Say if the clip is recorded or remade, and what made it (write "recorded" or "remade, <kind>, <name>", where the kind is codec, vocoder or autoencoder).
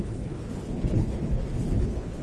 remade, codec, HILCodec